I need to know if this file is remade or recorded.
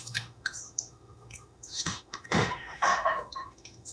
remade